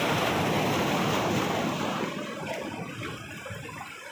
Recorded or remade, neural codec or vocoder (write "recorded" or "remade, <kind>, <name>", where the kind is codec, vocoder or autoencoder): recorded